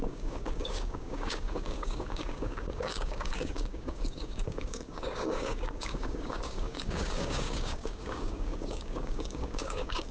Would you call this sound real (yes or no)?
no